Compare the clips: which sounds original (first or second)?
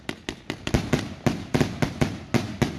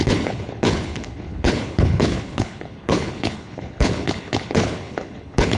first